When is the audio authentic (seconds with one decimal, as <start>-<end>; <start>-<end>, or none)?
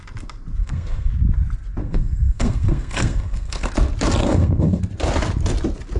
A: 0.0-0.6; 1.1-1.8; 3.7-4.2; 4.8-6.0